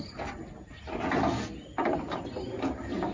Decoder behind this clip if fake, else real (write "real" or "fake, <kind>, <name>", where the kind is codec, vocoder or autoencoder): real